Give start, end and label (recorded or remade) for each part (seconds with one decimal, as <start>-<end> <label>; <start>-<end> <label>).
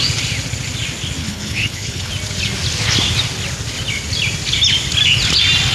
0.0-1.2 recorded; 1.2-2.1 remade; 2.1-5.7 recorded